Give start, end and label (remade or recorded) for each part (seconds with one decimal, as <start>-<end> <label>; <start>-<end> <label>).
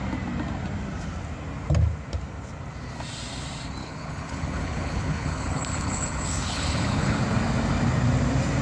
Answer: 0.0-3.8 recorded; 3.8-7.2 remade; 7.2-8.6 recorded